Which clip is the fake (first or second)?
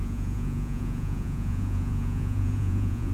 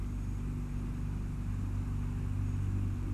first